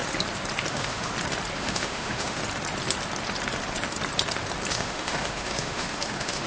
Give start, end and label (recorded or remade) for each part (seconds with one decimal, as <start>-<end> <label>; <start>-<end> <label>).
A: 0.0-0.7 recorded; 0.7-1.1 remade; 1.1-1.6 recorded; 1.6-2.4 remade; 2.4-4.7 recorded; 4.7-6.5 remade